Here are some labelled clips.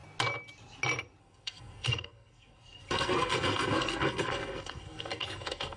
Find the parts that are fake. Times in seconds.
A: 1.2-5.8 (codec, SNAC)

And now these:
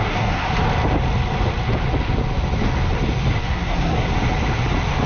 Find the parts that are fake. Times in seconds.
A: 0.0-0.5 (codec, SNAC); 3.4-4.1

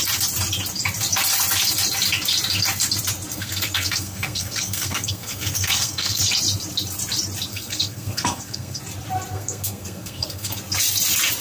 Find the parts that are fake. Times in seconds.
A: 3.3-6.2 (codec, SNAC); 7.5-8.8; 9.3-10.6

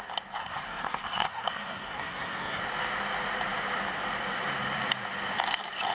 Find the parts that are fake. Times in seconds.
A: 0.4-2.6 (codec, SNAC)

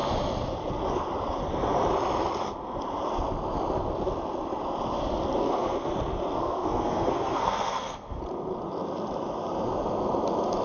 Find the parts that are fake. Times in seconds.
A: 5.4-5.9 (codec, SNAC); 6.4-8.2